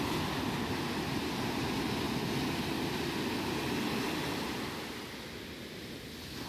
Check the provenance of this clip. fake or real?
real